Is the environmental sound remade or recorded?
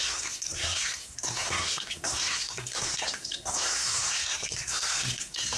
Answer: remade